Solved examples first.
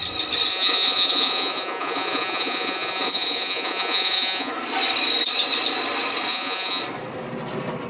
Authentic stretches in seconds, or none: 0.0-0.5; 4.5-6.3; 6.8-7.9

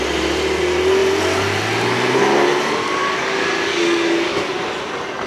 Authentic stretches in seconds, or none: 0.0-3.0; 4.5-5.3

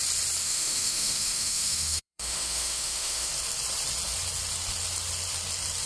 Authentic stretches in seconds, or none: 0.0-0.4; 3.3-5.9

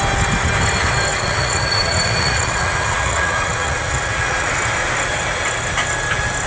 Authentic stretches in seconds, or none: 0.0-1.1; 4.5-6.5

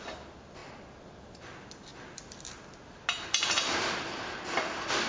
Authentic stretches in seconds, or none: 0.0-5.1